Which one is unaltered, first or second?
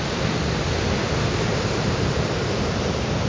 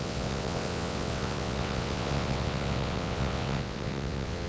first